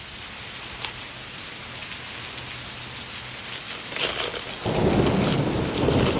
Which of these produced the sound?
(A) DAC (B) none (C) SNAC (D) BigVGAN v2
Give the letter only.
B